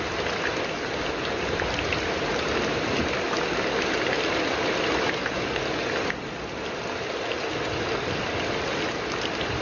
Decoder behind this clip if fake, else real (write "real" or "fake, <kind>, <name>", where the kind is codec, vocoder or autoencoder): real